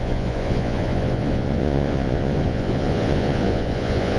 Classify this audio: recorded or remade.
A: remade